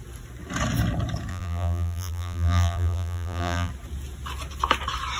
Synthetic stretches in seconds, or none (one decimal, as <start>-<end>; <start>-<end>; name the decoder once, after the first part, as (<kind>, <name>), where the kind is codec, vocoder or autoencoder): 1.3-3.7 (vocoder, BigVGAN v2)